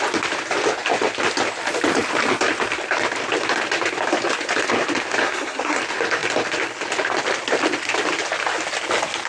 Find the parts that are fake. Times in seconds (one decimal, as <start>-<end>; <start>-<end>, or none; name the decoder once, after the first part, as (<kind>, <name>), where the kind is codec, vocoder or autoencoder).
5.2-5.8 (codec, SNAC)